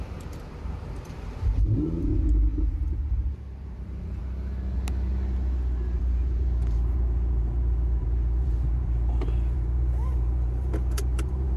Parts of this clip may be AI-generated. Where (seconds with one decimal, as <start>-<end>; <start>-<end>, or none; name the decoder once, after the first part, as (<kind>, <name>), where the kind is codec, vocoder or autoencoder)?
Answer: 0.0-2.1 (vocoder, BigVGAN v2); 3.1-4.2; 6.0-11.6